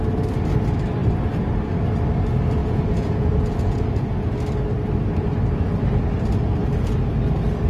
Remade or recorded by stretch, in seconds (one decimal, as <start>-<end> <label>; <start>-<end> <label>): 0.0-2.6 recorded; 2.6-4.4 remade; 4.4-7.7 recorded